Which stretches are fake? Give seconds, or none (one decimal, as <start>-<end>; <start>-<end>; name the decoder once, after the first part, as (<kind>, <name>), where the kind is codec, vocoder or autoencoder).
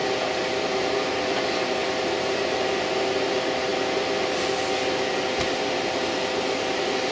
none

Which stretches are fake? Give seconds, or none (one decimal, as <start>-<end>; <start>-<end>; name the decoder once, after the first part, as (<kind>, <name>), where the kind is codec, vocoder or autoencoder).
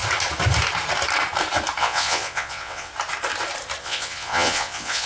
1.8-2.9 (vocoder, WaveNeXt); 3.8-5.1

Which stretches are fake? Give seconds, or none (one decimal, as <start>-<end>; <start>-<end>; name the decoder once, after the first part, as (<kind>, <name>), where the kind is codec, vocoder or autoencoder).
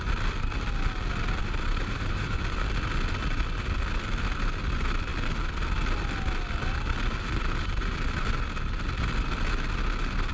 1.4-2.4 (vocoder, BigVGAN v2)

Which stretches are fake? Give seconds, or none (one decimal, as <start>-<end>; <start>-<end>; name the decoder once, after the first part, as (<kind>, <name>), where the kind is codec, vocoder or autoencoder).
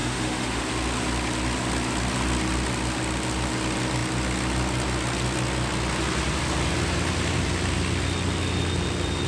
0.0-0.6 (autoencoder, DAC-VAE)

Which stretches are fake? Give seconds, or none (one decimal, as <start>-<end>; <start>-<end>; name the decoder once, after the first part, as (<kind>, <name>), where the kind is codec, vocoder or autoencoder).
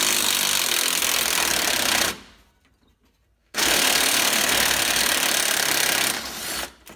3.4-5.0 (codec, SNAC)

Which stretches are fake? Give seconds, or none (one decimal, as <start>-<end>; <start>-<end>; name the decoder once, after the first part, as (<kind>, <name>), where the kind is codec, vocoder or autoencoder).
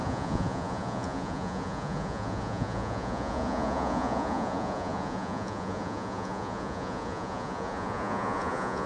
0.0-8.9 (vocoder, Vocos)